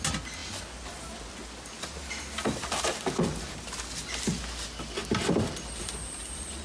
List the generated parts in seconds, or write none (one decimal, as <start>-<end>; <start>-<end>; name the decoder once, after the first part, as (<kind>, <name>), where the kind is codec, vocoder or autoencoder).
none